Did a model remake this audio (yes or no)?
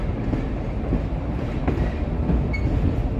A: no